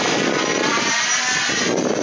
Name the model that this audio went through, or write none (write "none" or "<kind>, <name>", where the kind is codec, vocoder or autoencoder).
none